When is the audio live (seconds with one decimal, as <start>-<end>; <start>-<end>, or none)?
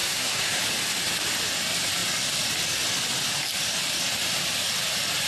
0.6-5.3